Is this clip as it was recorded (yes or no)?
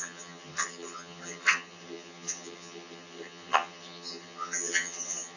no